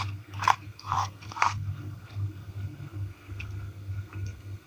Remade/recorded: remade